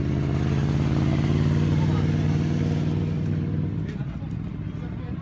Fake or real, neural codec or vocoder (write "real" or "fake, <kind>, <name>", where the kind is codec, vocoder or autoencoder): real